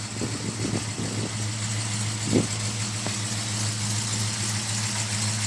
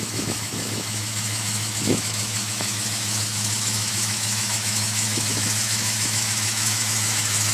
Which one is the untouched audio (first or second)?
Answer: first